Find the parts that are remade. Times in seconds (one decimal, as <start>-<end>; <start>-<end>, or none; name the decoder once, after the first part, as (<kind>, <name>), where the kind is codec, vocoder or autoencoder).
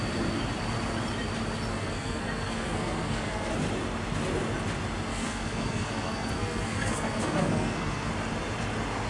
1.7-3.5 (codec, SNAC); 5.1-8.1